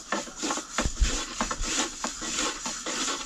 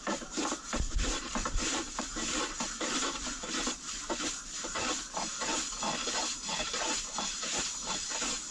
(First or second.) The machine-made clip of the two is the second